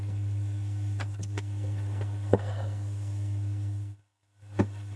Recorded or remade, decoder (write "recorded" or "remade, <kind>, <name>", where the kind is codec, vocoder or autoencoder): remade, codec, SNAC